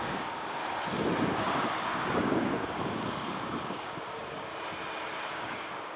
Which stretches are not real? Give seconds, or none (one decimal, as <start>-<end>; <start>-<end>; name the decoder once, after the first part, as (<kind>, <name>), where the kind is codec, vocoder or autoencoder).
0.0-0.6 (codec, DAC); 1.2-4.5; 5.3-6.0